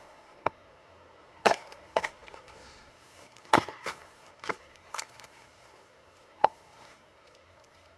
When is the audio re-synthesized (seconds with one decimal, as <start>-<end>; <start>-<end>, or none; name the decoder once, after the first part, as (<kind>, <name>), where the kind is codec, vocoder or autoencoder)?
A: 0.0-8.0 (codec, SNAC)